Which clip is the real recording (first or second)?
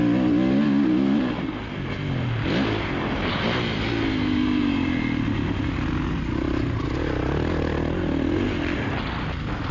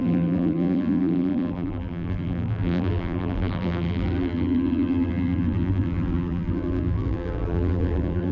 first